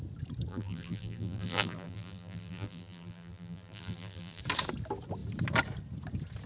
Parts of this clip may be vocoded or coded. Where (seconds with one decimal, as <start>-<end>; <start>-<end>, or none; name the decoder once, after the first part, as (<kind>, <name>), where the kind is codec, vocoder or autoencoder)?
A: 0.5-4.4 (vocoder, BigVGAN v2)